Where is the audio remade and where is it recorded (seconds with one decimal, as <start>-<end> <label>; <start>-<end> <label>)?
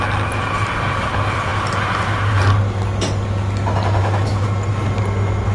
0.0-4.0 recorded; 4.0-4.5 remade; 4.5-5.5 recorded